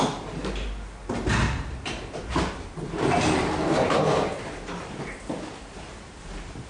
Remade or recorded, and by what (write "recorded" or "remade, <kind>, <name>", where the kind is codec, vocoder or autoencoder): recorded